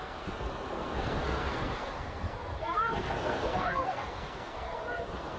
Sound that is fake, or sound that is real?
fake